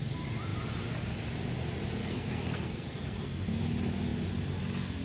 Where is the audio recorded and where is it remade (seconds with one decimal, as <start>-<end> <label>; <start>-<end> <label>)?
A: 0.0-2.0 recorded; 2.0-3.6 remade; 3.6-5.0 recorded